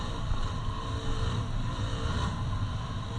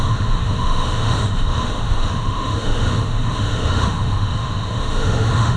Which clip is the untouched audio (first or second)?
first